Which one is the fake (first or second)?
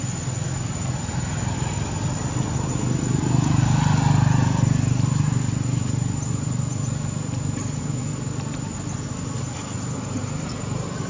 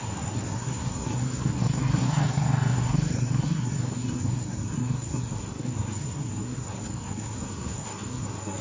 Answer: second